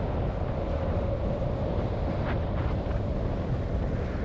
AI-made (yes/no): no